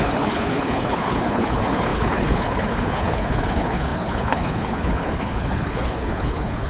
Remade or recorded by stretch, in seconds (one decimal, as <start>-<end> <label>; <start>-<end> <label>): 0.0-6.7 remade